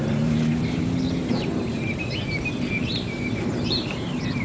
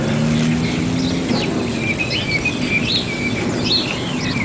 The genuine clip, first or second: second